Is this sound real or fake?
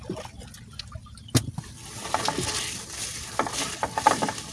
real